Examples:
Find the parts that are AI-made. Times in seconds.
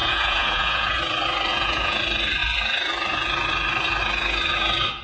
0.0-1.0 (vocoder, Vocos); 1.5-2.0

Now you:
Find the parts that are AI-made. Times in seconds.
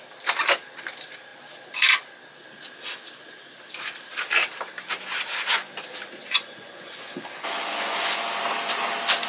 6.2-8.2 (vocoder, Vocos)